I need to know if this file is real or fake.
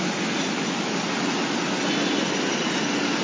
real